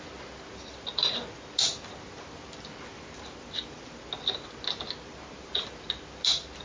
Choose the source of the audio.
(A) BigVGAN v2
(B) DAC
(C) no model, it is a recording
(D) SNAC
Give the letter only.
C